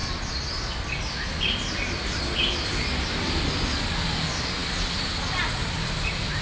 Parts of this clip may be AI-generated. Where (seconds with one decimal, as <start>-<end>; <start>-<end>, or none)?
0.0-3.8